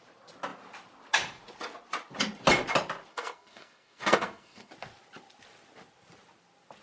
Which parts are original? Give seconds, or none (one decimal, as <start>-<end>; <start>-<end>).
0.0-3.1; 4.7-6.8